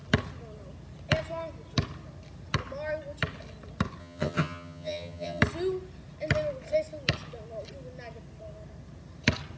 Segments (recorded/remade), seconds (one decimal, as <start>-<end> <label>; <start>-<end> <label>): 0.0-4.0 recorded; 4.0-5.4 remade; 5.4-9.6 recorded